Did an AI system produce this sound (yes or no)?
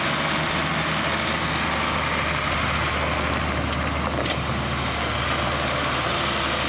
no